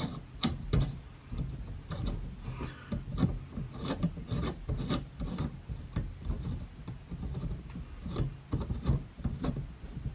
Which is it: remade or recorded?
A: recorded